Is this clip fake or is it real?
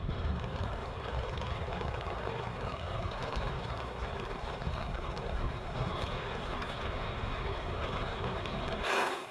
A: fake